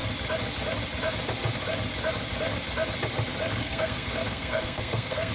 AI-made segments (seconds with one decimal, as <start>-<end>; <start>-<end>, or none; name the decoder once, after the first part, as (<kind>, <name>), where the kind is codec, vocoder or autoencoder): 3.6-5.3 (codec, SNAC)

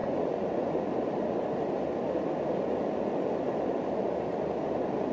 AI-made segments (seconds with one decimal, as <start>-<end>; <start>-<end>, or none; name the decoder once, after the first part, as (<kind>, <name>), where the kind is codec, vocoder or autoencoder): 0.0-0.9 (vocoder, Vocos)

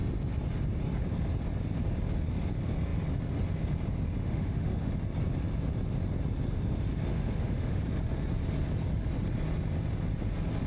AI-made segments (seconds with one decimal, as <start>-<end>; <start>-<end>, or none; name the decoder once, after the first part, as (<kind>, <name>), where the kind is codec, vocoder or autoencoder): 4.2-4.9 (autoencoder, DAC-VAE); 7.1-7.8

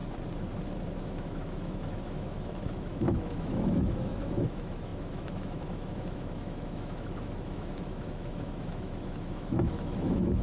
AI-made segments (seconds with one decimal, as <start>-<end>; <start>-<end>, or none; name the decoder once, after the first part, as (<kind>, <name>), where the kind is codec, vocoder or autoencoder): 1.0-10.4 (autoencoder, DAC-VAE)

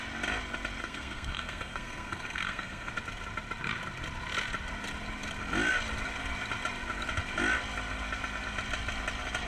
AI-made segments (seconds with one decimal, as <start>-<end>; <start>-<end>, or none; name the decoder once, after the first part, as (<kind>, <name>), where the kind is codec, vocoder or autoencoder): 0.8-2.9 (codec, SNAC)